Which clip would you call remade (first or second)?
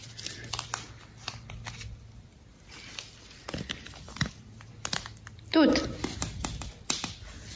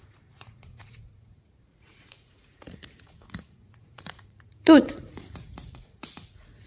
second